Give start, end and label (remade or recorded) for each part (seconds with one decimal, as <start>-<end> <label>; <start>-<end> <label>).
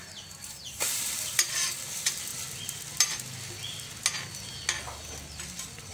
0.0-2.3 remade; 2.3-5.9 recorded